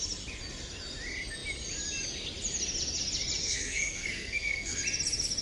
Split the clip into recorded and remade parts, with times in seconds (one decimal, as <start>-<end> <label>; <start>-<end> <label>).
0.0-3.4 recorded; 3.4-4.8 remade; 4.8-5.4 recorded